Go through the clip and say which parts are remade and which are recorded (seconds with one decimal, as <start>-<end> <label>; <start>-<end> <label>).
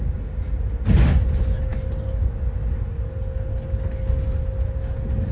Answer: 0.0-5.3 recorded